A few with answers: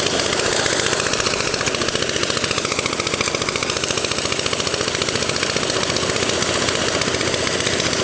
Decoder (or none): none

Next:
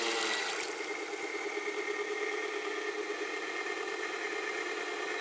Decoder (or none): none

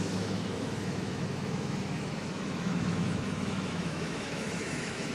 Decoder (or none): autoencoder, DAC-VAE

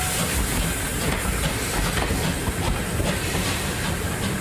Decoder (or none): none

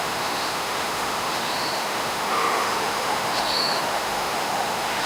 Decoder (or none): autoencoder, DAC-VAE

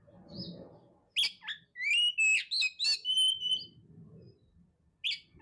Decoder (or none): none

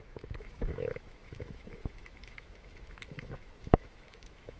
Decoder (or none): autoencoder, DAC-VAE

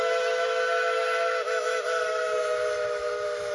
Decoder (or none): autoencoder, DAC-VAE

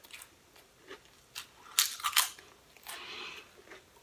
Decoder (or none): none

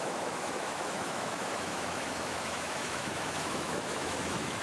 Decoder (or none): autoencoder, DAC-VAE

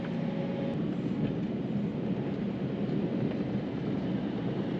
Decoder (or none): none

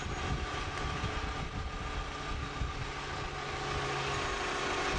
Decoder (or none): none